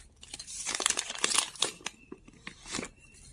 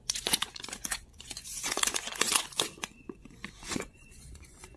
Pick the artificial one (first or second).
second